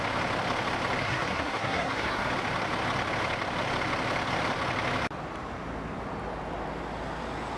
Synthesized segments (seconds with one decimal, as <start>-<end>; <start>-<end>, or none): 1.0-2.3